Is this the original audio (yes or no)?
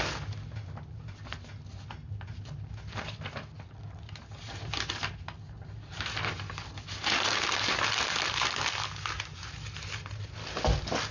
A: yes